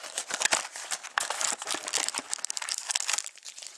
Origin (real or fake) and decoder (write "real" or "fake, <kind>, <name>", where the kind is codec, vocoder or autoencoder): real